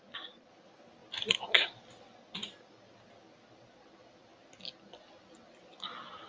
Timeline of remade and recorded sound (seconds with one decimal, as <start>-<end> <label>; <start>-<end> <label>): 0.0-6.3 recorded